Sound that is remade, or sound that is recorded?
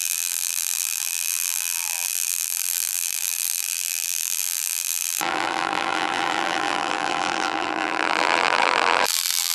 remade